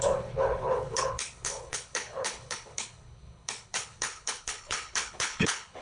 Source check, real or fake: fake